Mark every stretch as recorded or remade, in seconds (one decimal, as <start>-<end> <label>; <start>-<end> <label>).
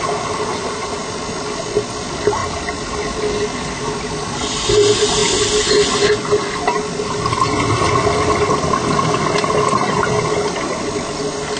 0.0-0.5 recorded; 0.5-1.0 remade; 1.0-11.6 recorded